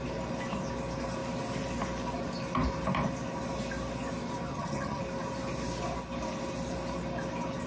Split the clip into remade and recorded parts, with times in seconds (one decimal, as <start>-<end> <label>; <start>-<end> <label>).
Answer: 0.0-4.5 recorded; 4.5-5.0 remade; 5.0-7.7 recorded

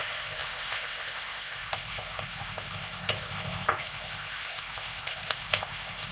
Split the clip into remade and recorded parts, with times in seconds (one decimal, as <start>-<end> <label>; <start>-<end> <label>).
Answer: 0.0-6.1 remade

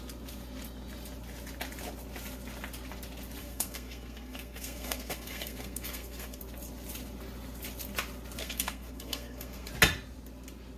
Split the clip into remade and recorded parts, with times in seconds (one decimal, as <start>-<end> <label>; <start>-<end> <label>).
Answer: 0.0-3.4 recorded; 3.4-6.4 remade; 6.4-8.4 recorded; 8.4-9.7 remade; 9.7-10.8 recorded

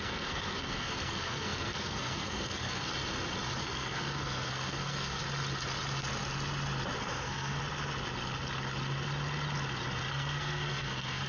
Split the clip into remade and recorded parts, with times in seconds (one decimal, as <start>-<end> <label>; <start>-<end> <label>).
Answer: 0.0-2.9 remade; 2.9-3.6 recorded; 3.6-5.2 remade; 5.2-7.0 recorded; 7.0-7.6 remade; 7.6-10.1 recorded; 10.1-11.3 remade

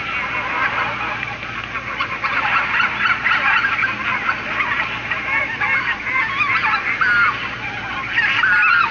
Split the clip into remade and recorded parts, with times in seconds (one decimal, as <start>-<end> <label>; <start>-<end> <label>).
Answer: 0.0-8.9 recorded

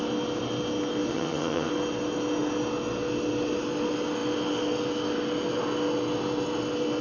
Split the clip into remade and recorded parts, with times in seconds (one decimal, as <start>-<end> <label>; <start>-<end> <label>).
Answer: 0.0-1.1 recorded; 1.1-1.7 remade; 1.7-7.0 recorded

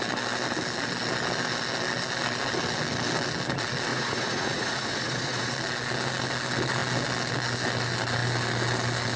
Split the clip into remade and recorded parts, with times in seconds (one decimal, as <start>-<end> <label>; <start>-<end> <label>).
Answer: 0.0-3.9 recorded; 3.9-5.5 remade; 5.5-9.2 recorded